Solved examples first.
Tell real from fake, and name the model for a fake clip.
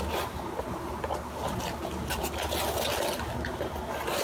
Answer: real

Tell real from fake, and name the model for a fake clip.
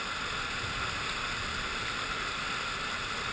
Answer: real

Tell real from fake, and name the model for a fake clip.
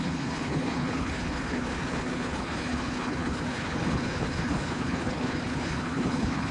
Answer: fake, codec, HILCodec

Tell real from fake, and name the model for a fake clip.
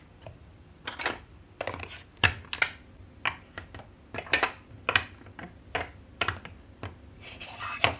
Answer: real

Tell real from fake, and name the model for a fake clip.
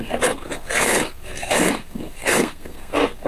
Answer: fake, codec, SNAC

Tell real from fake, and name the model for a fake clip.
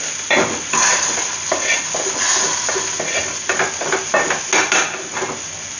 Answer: real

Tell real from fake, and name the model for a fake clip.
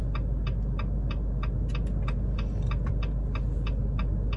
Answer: real